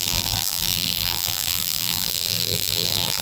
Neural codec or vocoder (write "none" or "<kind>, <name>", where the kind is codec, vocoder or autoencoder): vocoder, BigVGAN v2